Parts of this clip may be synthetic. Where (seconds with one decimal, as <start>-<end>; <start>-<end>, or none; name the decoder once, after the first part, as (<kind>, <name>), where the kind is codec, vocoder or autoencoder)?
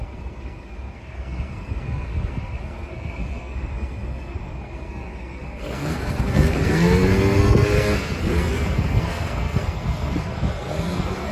0.0-11.3 (codec, SNAC)